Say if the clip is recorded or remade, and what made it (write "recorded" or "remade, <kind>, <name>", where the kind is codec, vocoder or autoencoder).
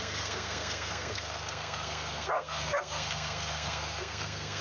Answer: remade, codec, SNAC